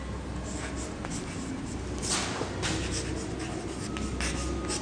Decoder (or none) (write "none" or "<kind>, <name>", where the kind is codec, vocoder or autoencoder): none